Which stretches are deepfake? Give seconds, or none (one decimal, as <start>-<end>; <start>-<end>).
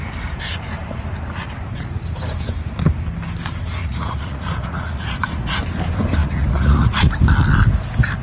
3.8-5.6; 6.2-7.1